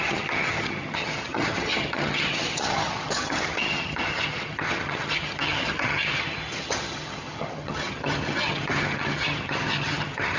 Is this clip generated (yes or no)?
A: yes